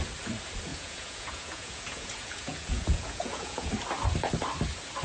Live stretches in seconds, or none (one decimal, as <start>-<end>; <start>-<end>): 0.0-0.7; 3.7-5.0